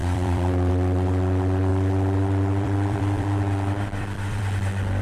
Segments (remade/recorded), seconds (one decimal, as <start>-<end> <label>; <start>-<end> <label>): 0.0-0.7 remade; 0.7-1.7 recorded; 1.7-4.4 remade; 4.4-5.0 recorded